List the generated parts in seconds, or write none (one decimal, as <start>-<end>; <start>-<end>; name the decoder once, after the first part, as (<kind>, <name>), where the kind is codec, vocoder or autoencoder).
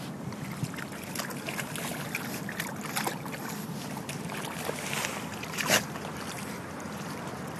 none